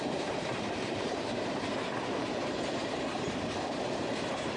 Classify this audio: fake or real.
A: fake